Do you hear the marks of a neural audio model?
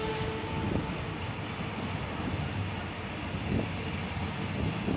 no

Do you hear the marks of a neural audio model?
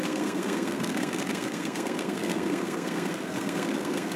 yes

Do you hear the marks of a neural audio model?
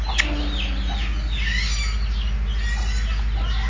no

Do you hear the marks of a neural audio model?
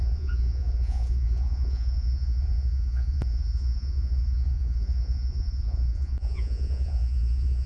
yes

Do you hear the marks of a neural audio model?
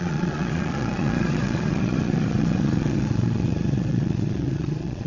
yes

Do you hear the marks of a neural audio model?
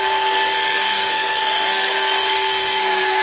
yes